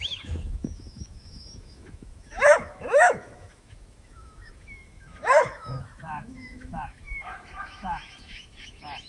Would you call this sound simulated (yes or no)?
yes